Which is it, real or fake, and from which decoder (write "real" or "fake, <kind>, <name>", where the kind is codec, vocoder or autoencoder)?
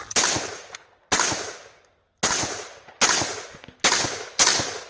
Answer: real